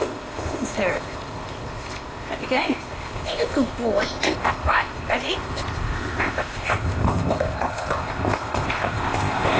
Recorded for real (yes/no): no